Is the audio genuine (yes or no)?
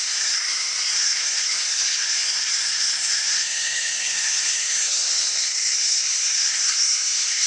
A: no